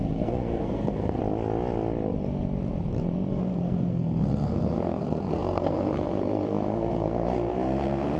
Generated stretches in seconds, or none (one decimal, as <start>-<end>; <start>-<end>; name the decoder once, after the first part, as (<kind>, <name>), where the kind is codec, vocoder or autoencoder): 0.0-1.2 (codec, SNAC); 3.3-8.2